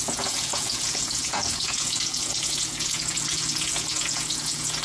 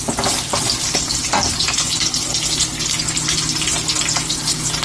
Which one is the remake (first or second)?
first